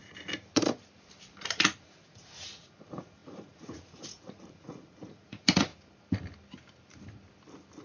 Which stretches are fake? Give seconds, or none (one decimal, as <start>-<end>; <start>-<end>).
1.8-5.7